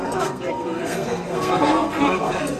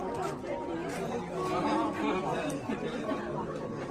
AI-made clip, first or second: first